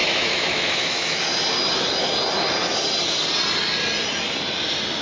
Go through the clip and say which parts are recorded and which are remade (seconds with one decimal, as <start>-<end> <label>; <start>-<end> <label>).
0.0-1.2 remade; 1.2-5.0 recorded